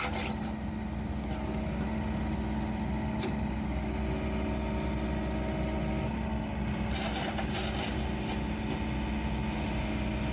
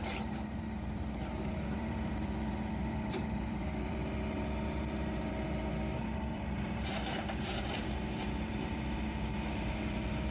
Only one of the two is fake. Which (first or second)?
second